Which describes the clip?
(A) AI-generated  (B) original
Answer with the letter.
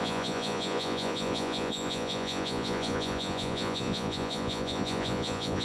A